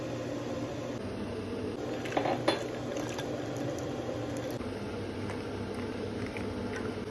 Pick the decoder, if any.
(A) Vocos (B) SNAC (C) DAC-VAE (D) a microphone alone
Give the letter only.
D